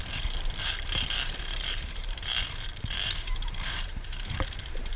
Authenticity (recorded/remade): remade